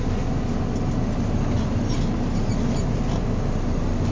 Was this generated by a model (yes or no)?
no